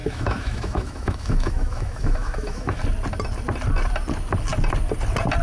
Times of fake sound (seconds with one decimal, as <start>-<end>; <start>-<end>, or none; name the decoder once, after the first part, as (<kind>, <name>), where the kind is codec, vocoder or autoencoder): 0.0-2.8 (autoencoder, DAC-VAE)

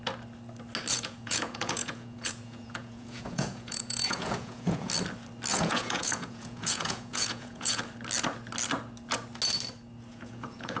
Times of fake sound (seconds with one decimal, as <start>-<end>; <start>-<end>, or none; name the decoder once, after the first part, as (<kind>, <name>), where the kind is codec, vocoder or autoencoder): 0.9-4.9 (vocoder, Vocos); 5.5-7.8; 10.1-10.8

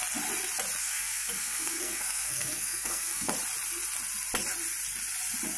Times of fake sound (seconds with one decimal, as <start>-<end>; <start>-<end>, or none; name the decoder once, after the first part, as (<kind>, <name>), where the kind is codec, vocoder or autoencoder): 0.8-3.3 (codec, SNAC)

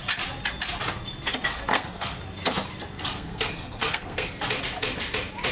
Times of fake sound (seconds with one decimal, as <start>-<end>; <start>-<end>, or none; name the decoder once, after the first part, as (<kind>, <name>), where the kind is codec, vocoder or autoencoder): 1.7-2.2 (codec, SNAC); 3.0-4.4

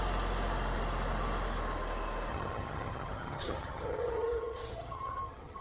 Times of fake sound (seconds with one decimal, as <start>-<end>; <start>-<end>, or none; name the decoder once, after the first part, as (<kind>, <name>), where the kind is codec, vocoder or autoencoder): 2.3-5.6 (vocoder, HiFi-GAN)

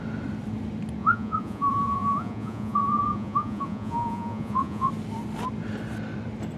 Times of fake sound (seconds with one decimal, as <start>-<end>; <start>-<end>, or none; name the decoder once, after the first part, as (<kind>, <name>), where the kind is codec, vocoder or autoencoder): 1.0-4.9 (vocoder, Vocos)

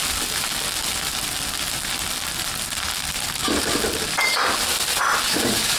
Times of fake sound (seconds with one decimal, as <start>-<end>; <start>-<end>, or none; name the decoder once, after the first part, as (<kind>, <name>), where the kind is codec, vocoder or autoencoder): 3.4-4.3 (vocoder, BigVGAN v2)

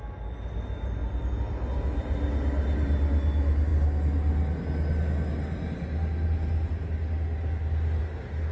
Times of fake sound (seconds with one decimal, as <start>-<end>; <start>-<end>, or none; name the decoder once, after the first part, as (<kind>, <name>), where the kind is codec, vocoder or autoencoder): none